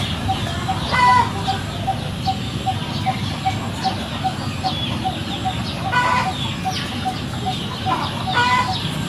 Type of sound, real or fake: real